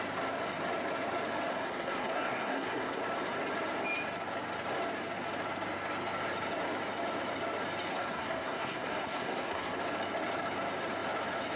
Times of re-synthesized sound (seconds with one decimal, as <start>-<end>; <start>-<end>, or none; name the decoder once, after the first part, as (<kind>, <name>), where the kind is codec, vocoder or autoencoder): 1.5-3.0 (codec, SNAC); 7.9-9.8